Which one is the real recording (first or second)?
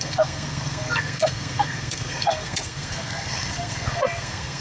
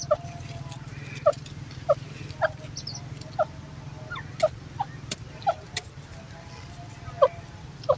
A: second